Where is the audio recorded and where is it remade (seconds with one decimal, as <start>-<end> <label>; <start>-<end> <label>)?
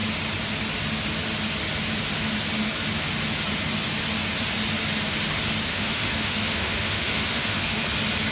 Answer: 0.0-5.7 recorded; 5.7-7.8 remade; 7.8-8.3 recorded